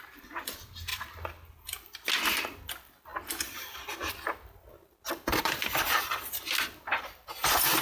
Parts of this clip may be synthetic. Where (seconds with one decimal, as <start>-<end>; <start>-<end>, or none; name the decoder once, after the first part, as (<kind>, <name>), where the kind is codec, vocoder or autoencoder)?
4.7-6.2 (vocoder, BigVGAN v2)